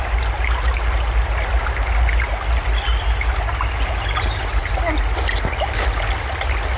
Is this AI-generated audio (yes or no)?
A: no